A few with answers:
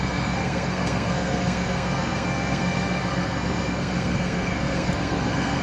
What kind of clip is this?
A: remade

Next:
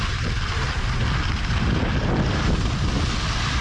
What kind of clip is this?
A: recorded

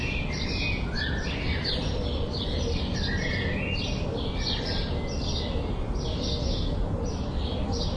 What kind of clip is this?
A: recorded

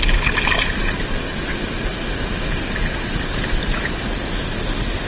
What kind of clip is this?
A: recorded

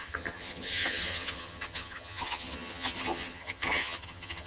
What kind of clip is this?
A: remade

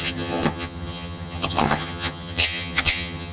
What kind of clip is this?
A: remade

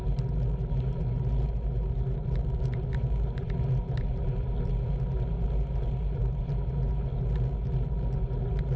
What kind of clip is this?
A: recorded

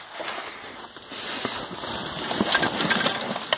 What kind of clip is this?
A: recorded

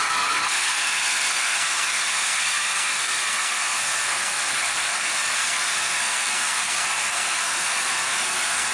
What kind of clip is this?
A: remade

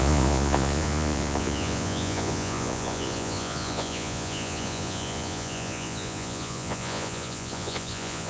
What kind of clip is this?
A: remade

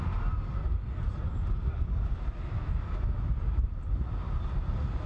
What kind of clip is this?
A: recorded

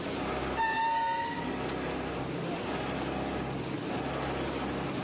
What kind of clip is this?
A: recorded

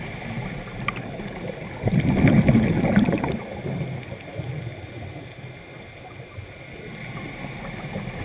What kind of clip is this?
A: recorded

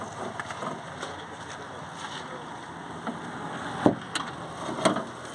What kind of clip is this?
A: recorded